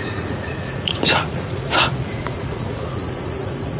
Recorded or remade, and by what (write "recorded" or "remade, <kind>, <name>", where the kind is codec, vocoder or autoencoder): remade, vocoder, Vocos